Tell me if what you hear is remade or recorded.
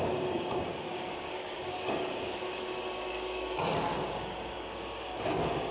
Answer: remade